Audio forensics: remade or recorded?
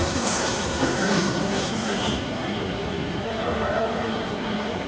remade